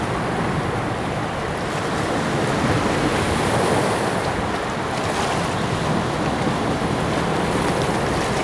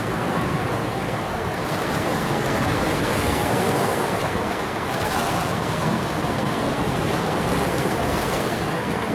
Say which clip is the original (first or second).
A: first